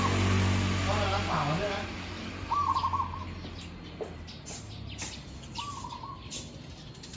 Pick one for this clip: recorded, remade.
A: recorded